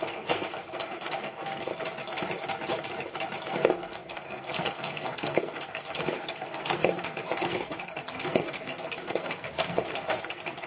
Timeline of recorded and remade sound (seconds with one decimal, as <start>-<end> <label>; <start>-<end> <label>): 0.0-1.7 remade; 1.7-3.5 recorded; 3.5-10.7 remade